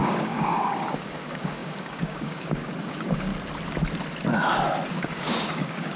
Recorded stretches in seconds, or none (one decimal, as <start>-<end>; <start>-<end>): 3.3-4.9